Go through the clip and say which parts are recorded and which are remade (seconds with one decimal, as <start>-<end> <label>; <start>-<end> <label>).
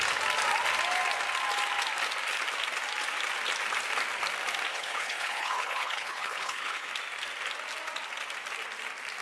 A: 0.0-4.7 recorded; 4.7-6.9 remade; 6.9-9.2 recorded